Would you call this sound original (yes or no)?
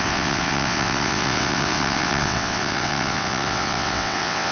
no